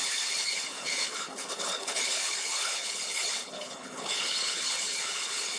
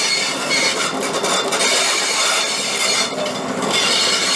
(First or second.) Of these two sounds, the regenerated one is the first